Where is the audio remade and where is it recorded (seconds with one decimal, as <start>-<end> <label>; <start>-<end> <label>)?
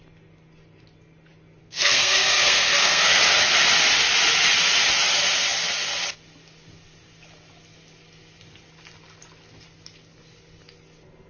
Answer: 0.0-1.6 recorded; 1.6-3.2 remade; 3.2-11.3 recorded